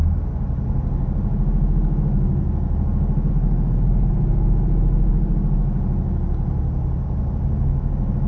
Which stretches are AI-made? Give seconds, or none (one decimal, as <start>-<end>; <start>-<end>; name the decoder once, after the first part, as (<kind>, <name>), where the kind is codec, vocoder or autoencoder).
none